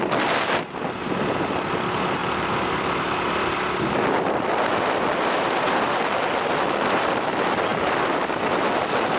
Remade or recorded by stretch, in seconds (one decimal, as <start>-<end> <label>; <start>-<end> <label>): 0.0-2.2 recorded; 2.2-5.0 remade; 5.0-9.2 recorded